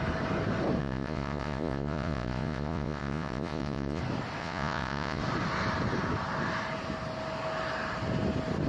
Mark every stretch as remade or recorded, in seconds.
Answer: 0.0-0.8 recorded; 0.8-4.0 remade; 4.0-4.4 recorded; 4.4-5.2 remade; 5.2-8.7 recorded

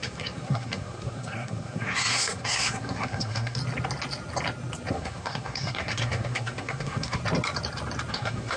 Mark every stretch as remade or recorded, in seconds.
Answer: 0.0-3.6 remade; 3.6-4.9 recorded; 4.9-7.2 remade; 7.2-8.1 recorded; 8.1-8.6 remade

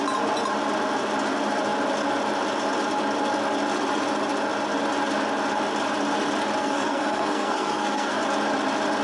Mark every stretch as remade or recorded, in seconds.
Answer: 0.0-6.6 recorded; 6.6-8.2 remade; 8.2-9.0 recorded

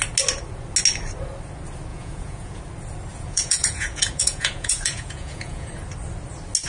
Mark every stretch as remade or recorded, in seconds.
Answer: 0.0-1.9 recorded; 1.9-2.6 remade; 2.6-3.1 recorded; 3.1-5.7 remade; 5.7-6.7 recorded

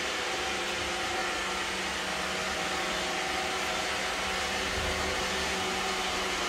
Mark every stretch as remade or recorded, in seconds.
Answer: 0.0-1.2 remade; 1.2-5.1 recorded; 5.1-6.5 remade

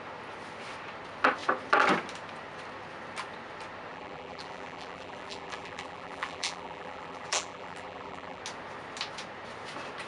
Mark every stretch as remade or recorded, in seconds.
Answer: 0.0-3.9 recorded; 3.9-8.4 remade; 8.4-10.1 recorded